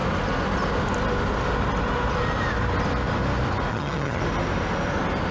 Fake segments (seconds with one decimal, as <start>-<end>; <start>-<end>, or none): 3.7-4.2